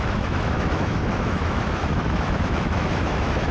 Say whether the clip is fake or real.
fake